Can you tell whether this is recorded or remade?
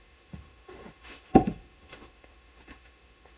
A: remade